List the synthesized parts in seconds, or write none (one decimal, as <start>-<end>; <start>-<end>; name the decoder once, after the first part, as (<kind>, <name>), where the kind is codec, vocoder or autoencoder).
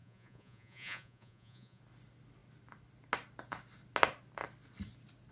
0.0-1.8 (vocoder, Vocos)